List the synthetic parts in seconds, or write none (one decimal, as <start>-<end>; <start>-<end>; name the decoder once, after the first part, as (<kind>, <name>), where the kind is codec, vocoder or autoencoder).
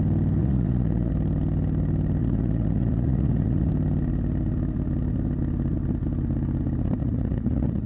0.4-1.1 (vocoder, Vocos); 2.2-3.7; 7.0-7.9